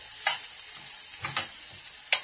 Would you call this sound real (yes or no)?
yes